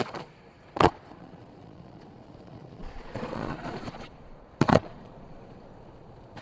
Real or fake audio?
fake